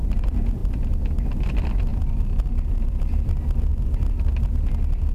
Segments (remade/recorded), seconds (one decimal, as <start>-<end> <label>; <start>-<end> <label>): 0.0-0.6 recorded; 0.6-1.3 remade; 1.3-5.1 recorded